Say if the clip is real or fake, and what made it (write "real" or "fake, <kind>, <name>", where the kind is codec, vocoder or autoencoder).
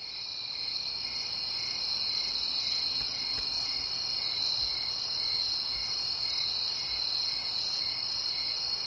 real